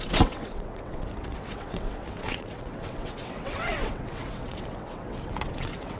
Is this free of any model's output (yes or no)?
no